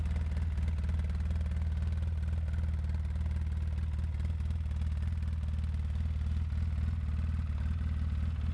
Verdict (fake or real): real